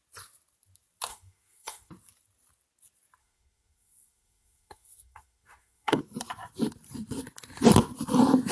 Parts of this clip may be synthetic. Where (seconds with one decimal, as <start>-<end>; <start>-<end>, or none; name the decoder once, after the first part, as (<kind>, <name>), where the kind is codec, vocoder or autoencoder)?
1.1-1.9 (codec, SNAC); 3.2-6.0